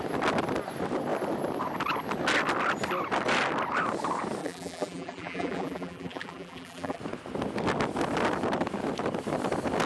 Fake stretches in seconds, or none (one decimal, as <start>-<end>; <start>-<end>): 4.4-7.0